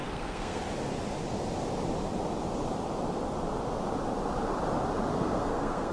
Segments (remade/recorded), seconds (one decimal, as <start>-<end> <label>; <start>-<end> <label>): 0.0-0.6 remade; 0.6-5.1 recorded; 5.1-5.9 remade